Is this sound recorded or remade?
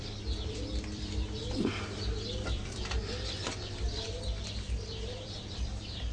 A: remade